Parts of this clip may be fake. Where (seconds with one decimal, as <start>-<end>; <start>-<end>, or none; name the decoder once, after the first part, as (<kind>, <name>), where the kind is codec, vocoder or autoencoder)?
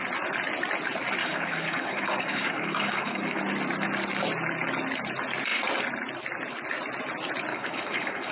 1.2-3.4 (codec, DAC); 7.5-8.3